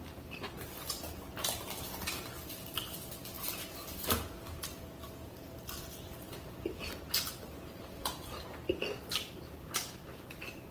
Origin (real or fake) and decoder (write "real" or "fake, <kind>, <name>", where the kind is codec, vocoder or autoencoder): real